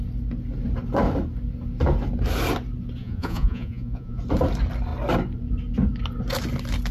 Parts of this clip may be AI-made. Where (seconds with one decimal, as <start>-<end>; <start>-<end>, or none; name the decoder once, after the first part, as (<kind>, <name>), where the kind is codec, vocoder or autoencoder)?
3.0-4.2 (vocoder, Vocos)